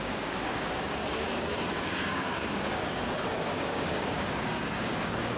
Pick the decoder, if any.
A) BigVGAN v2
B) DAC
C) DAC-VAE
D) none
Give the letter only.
B